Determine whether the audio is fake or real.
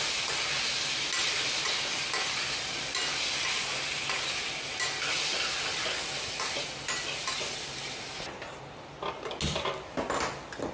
real